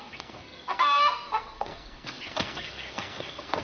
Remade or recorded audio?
remade